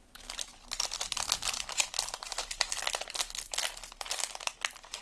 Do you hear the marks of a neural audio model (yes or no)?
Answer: no